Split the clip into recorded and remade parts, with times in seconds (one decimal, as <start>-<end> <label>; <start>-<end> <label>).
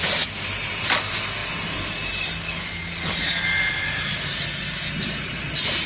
0.0-5.9 recorded